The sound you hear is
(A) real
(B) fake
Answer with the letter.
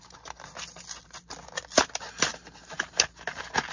A